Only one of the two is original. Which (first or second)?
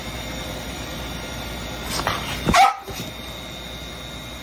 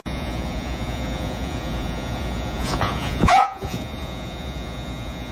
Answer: first